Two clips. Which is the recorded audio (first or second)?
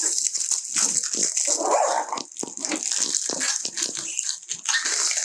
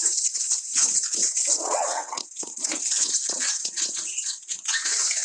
first